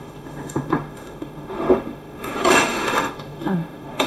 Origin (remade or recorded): remade